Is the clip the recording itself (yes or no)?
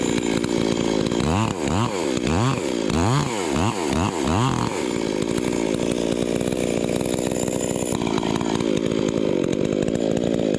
yes